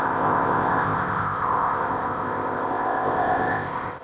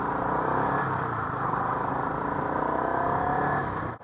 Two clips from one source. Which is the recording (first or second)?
second